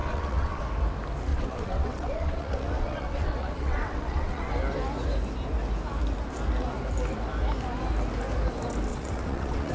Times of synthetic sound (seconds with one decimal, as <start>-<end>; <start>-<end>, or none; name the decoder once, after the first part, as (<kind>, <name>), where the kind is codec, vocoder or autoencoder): 0.0-0.6 (vocoder, WaveNeXt); 1.3-4.5; 8.9-9.7